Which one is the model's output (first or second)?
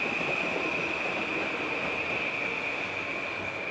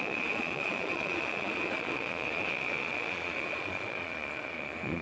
second